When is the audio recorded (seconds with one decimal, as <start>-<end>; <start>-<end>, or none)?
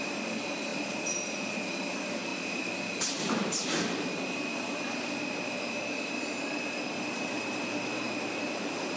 none